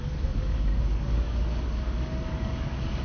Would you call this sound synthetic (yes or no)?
yes